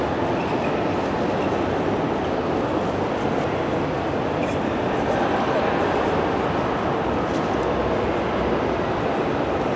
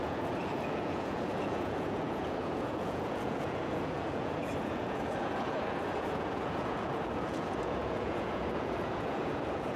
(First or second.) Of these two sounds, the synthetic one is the second